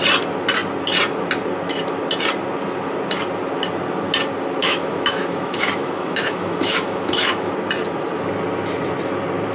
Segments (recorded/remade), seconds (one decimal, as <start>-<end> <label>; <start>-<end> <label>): 0.0-4.6 recorded; 4.6-7.5 remade; 7.5-9.5 recorded